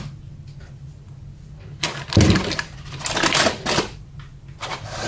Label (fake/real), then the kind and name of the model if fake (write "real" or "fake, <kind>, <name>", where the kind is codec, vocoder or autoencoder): real